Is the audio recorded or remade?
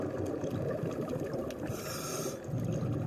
recorded